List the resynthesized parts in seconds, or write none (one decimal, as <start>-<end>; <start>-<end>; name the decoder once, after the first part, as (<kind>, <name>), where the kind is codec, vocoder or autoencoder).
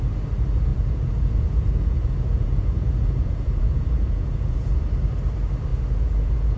0.7-4.7 (vocoder, Vocos); 5.7-6.6